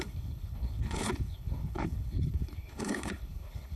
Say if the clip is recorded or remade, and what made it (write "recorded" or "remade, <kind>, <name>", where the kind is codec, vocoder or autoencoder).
remade, codec, HILCodec